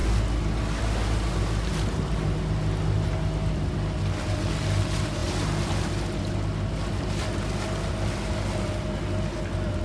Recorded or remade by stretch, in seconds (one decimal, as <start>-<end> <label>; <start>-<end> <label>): 0.0-9.8 recorded